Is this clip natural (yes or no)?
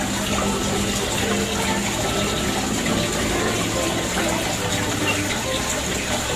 yes